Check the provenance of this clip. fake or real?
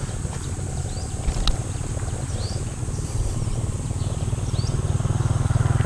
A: real